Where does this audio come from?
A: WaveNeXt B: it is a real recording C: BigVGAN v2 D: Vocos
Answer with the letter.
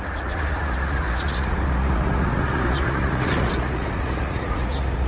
D